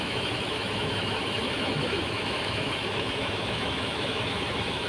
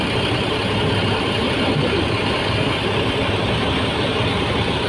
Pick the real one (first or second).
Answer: second